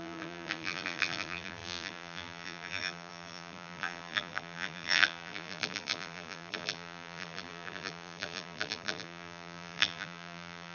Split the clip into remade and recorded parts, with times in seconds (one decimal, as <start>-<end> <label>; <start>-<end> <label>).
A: 0.0-10.7 remade